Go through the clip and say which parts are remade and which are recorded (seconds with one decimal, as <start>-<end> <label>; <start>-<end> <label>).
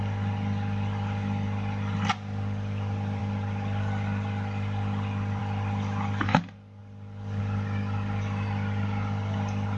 0.0-9.8 recorded